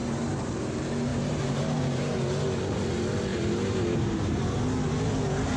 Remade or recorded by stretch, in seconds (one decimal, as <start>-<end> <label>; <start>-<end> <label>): 0.0-0.6 remade; 0.6-1.1 recorded; 1.1-2.2 remade; 2.2-3.3 recorded; 3.3-4.4 remade; 4.4-5.6 recorded